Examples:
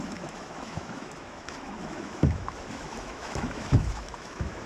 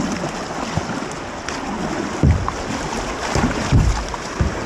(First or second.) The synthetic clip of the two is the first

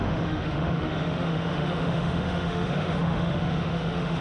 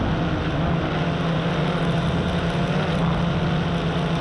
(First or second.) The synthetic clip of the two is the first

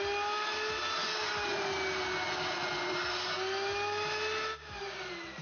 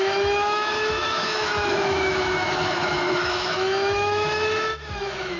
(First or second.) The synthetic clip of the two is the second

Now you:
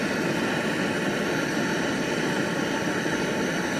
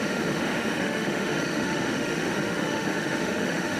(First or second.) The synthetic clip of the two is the second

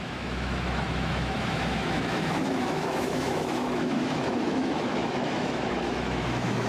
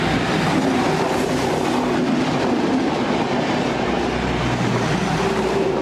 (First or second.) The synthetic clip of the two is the first